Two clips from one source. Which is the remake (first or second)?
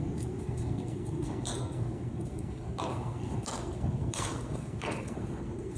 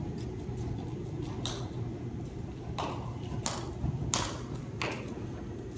first